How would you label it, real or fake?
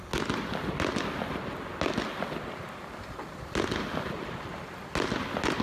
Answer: real